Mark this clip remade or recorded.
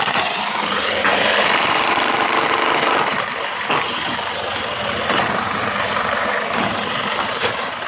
remade